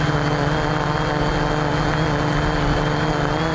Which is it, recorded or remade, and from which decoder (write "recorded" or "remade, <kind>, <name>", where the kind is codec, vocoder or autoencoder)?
recorded